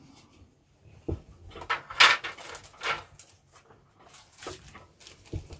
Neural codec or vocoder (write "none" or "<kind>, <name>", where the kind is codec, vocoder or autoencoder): none